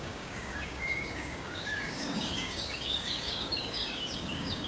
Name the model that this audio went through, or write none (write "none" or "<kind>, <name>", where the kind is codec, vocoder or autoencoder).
codec, DAC